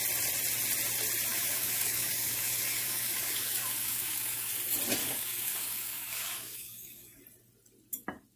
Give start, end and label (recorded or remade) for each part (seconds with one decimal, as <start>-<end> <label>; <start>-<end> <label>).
0.0-1.3 recorded; 1.3-4.5 remade; 4.5-5.0 recorded; 5.0-7.2 remade; 7.2-8.4 recorded